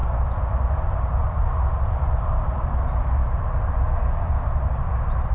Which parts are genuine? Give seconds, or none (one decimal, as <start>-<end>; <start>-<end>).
0.0-5.3

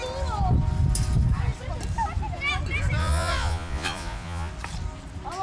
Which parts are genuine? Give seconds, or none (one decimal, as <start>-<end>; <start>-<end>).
0.0-3.0; 4.5-5.4

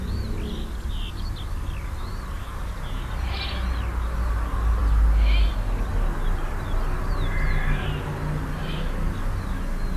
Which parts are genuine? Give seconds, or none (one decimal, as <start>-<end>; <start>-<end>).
0.0-10.0

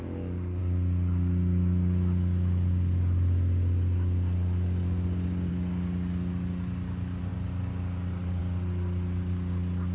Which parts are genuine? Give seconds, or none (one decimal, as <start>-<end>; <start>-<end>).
0.0-9.9

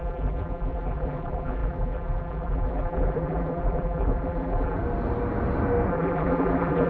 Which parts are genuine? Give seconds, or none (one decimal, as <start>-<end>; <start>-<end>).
4.8-5.9